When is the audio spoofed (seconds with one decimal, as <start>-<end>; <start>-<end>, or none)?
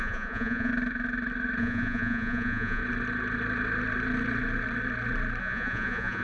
0.0-0.7; 1.6-2.8; 5.4-6.2